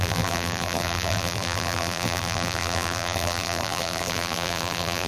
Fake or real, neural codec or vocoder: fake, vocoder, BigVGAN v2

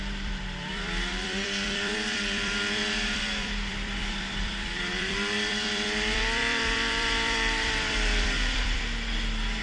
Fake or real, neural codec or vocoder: fake, vocoder, BigVGAN v2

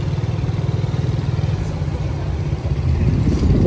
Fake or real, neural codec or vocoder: real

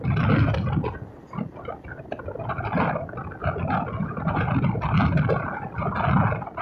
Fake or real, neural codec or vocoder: real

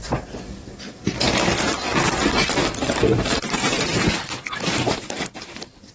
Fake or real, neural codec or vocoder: fake, vocoder, BigVGAN v2